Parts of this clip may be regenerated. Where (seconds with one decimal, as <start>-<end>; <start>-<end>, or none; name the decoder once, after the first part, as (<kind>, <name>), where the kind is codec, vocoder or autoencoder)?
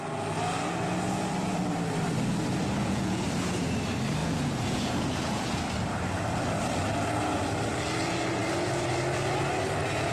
2.8-3.3 (vocoder, Vocos); 4.2-5.6